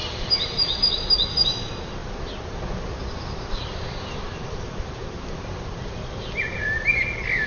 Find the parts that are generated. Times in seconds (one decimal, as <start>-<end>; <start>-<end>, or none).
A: 0.0-0.8; 2.0-6.2